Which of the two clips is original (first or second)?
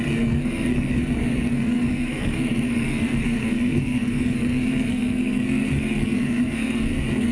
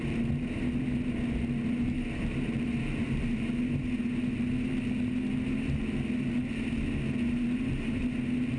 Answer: second